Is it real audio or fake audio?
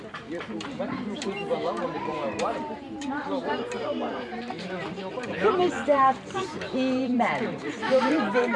fake